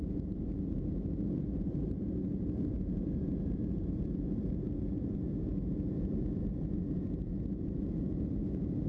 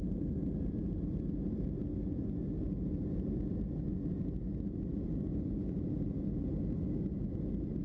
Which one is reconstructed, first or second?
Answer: first